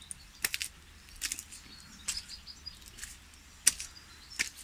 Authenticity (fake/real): real